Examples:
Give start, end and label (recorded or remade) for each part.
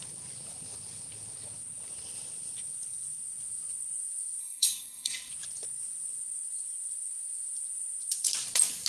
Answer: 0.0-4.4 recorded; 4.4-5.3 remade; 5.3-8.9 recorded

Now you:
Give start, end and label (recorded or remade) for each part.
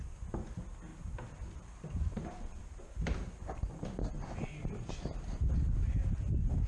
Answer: 0.0-0.9 recorded; 0.9-4.9 remade; 4.9-6.7 recorded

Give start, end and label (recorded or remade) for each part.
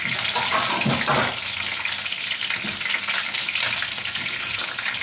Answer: 0.0-5.0 recorded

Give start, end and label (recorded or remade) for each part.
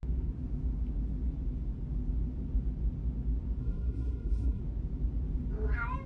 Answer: 0.0-3.6 recorded; 3.6-4.6 remade; 4.6-6.1 recorded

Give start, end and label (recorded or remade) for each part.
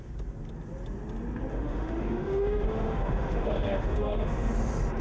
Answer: 0.0-1.5 recorded; 1.5-4.5 remade; 4.5-5.0 recorded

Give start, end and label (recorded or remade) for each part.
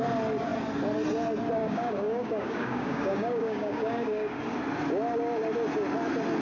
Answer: 0.0-1.6 recorded; 1.6-4.4 remade; 4.4-6.4 recorded